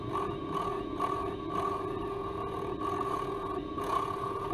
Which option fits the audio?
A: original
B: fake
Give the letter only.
B